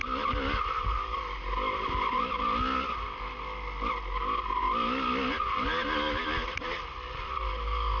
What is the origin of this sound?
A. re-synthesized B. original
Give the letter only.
B